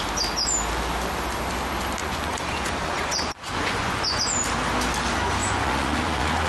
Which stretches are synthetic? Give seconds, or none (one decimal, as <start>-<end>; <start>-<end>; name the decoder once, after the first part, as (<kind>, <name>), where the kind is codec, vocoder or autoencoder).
2.0-4.2 (vocoder, Vocos); 5.4-6.5